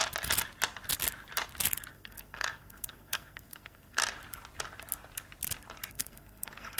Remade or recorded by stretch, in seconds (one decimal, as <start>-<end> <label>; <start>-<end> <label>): 0.0-1.9 recorded; 1.9-4.0 remade; 4.0-5.9 recorded; 5.9-6.8 remade